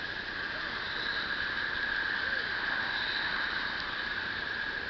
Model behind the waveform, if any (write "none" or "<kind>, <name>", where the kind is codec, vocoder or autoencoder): none